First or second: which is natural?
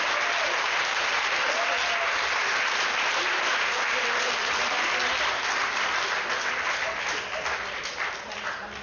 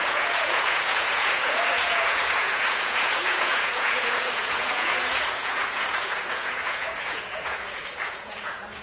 first